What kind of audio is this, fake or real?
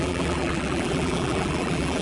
fake